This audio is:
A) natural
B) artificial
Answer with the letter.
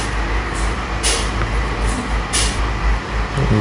A